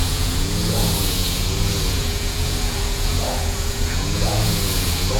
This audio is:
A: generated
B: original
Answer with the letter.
A